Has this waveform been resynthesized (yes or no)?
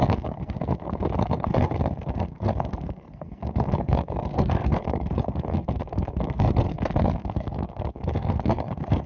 yes